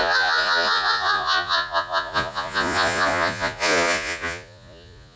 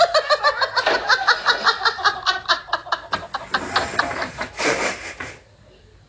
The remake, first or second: first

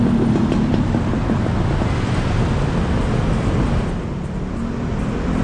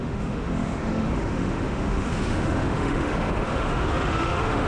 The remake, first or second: second